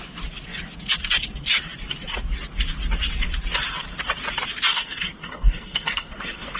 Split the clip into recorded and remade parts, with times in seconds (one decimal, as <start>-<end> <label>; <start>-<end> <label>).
0.0-4.7 recorded; 4.7-6.6 remade